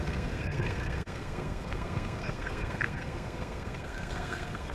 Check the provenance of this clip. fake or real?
fake